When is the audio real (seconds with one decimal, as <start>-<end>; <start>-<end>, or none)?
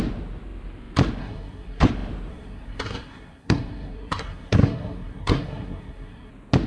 0.0-1.2; 1.9-2.3; 6.3-6.7